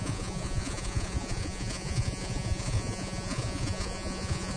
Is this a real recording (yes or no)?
no